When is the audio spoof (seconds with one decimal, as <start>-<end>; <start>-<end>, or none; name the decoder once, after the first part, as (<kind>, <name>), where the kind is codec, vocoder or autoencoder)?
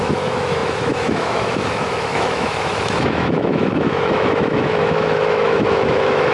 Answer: 0.0-6.3 (autoencoder, DAC-VAE)